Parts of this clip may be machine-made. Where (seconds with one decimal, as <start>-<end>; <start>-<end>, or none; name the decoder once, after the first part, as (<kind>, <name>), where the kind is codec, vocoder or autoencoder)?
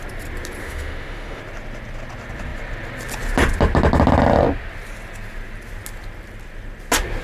0.6-1.4 (autoencoder, DAC-VAE)